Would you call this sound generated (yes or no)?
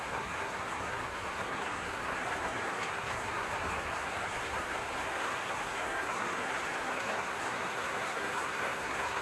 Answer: yes